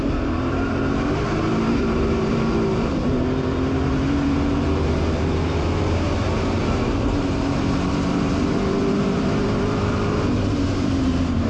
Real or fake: fake